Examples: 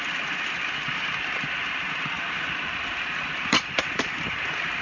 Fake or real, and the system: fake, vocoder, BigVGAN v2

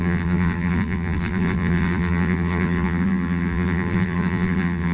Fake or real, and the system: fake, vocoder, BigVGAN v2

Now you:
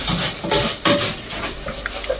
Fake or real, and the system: real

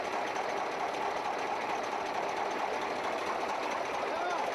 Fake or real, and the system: real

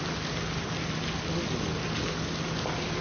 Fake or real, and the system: real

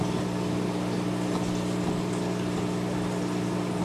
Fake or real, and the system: real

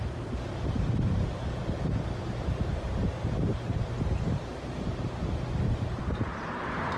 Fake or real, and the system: fake, vocoder, BigVGAN v2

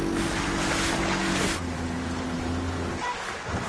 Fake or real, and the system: real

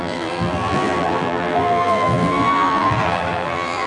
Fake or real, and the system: fake, vocoder, BigVGAN v2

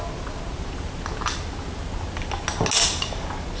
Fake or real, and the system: real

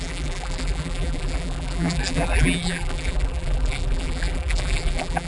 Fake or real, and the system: fake, vocoder, BigVGAN v2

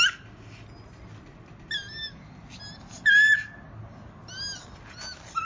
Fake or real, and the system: real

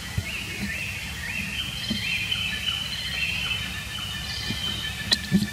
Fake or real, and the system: real